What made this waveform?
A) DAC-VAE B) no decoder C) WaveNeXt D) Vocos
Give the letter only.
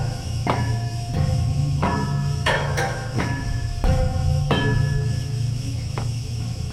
A